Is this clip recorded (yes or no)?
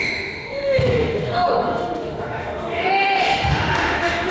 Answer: no